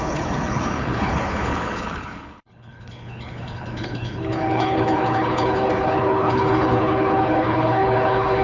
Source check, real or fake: fake